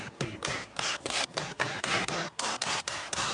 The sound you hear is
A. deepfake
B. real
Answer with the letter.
A